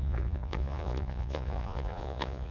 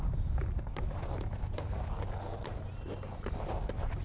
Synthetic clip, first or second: first